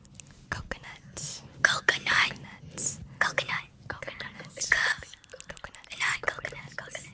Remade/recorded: recorded